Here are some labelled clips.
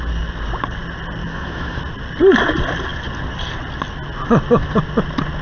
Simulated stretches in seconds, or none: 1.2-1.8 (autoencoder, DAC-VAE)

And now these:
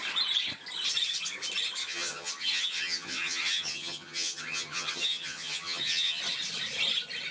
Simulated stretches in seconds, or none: 1.8-6.2 (vocoder, HiFi-GAN)

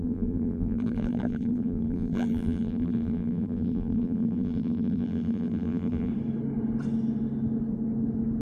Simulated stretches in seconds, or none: 0.0-6.1 (vocoder, BigVGAN v2)